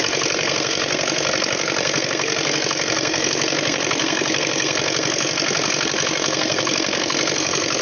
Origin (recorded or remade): remade